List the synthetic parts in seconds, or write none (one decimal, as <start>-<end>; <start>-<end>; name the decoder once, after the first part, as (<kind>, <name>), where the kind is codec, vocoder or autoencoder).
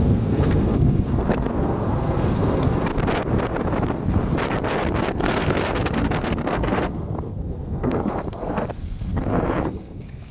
0.0-2.9 (codec, SNAC); 5.0-10.3